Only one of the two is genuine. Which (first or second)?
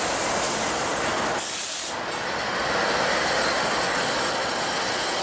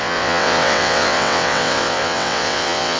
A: first